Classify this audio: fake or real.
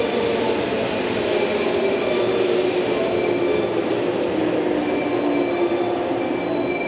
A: real